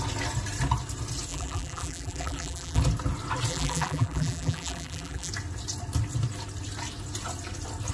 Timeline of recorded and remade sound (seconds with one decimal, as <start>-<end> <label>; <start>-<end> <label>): 0.0-1.3 recorded; 1.3-2.8 remade; 2.8-3.5 recorded; 3.5-5.3 remade; 5.3-7.9 recorded